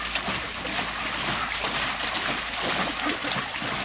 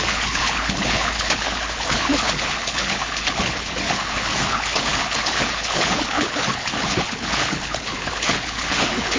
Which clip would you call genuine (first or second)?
first